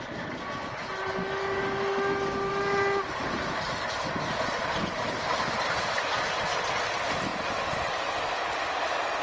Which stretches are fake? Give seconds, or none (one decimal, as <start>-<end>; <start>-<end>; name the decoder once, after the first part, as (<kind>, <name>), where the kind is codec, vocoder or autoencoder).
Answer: none